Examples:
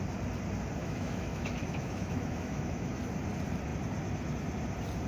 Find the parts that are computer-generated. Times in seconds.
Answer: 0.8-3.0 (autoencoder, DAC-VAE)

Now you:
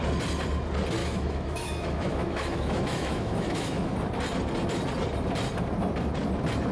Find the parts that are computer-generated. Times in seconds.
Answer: 1.0-3.9 (autoencoder, DAC-VAE)

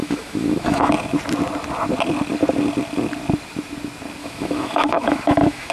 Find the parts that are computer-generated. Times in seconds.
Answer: 0.0-0.9 (autoencoder, DAC-VAE); 4.2-5.7

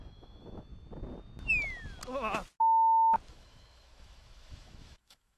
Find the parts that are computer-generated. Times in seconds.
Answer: 0.0-0.7 (autoencoder, DAC-VAE); 3.3-5.4

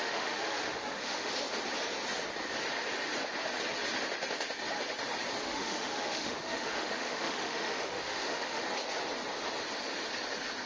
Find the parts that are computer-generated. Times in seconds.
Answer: 0.0-1.3 (autoencoder, DAC-VAE); 5.4-8.6

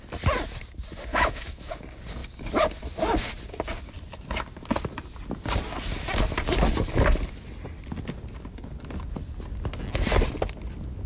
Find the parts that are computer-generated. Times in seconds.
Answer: 1.1-1.7 (autoencoder, DAC-VAE)